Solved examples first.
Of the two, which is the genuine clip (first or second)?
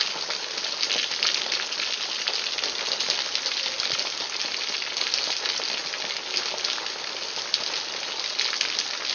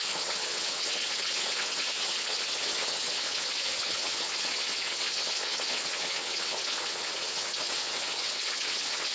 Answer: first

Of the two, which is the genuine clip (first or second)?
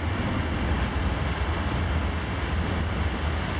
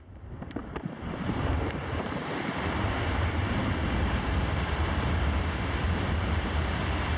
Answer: first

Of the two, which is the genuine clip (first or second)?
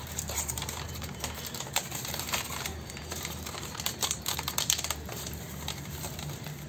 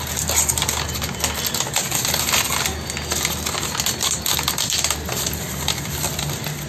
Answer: second